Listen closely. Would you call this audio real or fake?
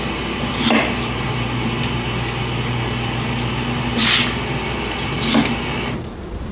real